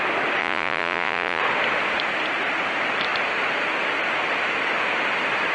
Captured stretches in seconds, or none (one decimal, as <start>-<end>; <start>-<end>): 0.0-0.4; 1.4-5.5